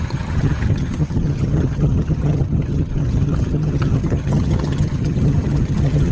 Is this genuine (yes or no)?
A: no